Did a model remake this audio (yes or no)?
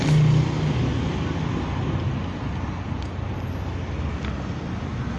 no